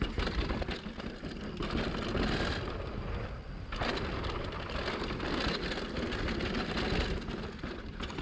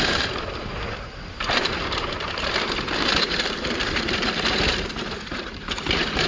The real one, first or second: first